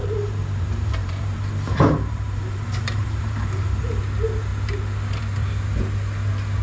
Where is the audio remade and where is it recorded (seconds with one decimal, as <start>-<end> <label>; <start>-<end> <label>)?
0.0-4.0 remade; 4.0-6.6 recorded